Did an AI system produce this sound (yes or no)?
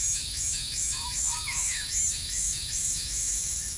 yes